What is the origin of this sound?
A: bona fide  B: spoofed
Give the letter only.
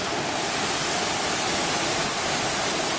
A